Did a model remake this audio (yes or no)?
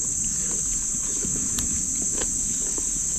no